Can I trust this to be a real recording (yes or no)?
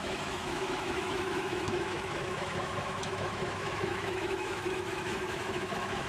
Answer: no